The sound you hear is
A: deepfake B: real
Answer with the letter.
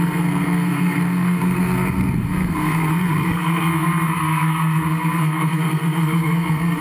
A